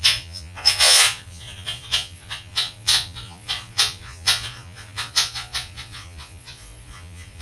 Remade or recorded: remade